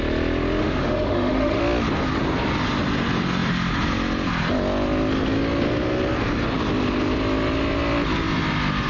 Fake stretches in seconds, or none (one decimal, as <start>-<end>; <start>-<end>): 0.6-1.6